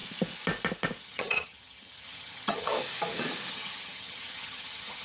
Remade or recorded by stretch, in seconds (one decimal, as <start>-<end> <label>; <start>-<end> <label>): 0.0-1.0 recorded; 1.0-2.7 remade; 2.7-3.5 recorded; 3.5-5.0 remade